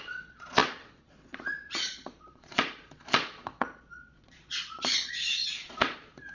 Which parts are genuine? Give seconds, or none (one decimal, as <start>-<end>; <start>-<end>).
none